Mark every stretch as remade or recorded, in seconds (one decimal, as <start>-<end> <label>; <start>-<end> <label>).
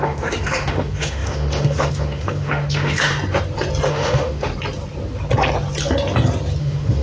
0.0-3.1 remade; 3.1-3.9 recorded; 3.9-4.5 remade; 4.5-6.6 recorded; 6.6-7.0 remade